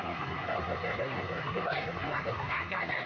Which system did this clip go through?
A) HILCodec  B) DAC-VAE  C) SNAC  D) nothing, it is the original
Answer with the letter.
C